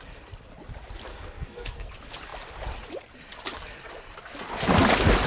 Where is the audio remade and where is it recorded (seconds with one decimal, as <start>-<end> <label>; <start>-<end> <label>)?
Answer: 0.0-1.1 recorded; 1.1-1.9 remade; 1.9-5.3 recorded